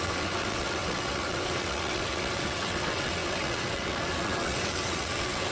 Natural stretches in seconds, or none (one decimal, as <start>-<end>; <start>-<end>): none